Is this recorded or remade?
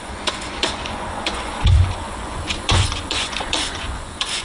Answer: remade